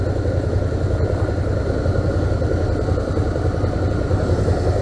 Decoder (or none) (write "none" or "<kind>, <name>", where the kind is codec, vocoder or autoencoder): none